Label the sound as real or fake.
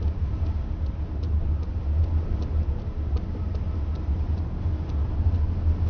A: real